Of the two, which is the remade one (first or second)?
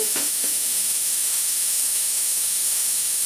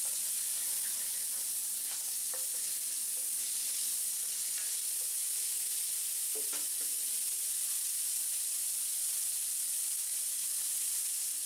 first